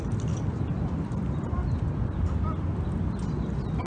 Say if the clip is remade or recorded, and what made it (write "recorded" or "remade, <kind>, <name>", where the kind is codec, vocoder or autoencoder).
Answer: recorded